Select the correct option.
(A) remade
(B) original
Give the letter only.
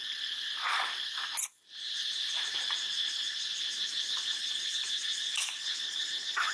B